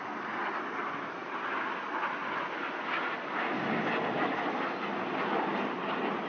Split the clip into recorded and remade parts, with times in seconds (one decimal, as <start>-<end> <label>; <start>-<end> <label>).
0.0-6.3 recorded